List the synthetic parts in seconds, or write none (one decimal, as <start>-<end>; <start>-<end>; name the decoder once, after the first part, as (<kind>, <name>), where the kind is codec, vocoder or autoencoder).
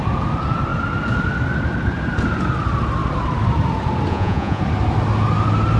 4.1-4.6 (vocoder, Vocos)